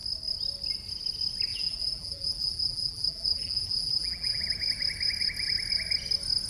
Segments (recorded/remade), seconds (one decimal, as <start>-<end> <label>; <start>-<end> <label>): 0.0-1.5 recorded; 1.5-4.4 remade; 4.4-6.5 recorded

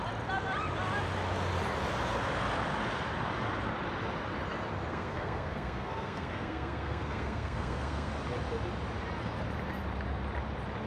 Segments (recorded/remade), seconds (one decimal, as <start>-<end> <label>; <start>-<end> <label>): 0.0-4.9 recorded; 4.9-8.1 remade; 8.1-10.9 recorded